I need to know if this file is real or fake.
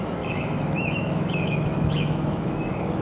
fake